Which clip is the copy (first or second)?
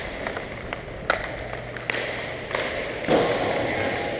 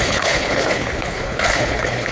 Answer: second